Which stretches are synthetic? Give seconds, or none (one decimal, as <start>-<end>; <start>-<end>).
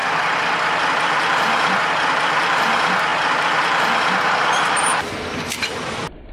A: 0.8-3.1; 4.5-4.9; 5.7-6.3